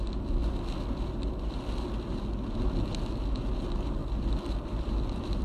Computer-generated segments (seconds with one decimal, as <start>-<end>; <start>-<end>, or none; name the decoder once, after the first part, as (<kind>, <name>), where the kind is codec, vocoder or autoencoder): 4.0-5.4 (vocoder, BigVGAN v2)